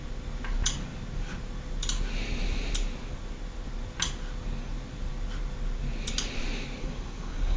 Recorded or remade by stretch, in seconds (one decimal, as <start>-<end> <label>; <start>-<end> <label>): 0.0-6.8 recorded; 6.8-7.6 remade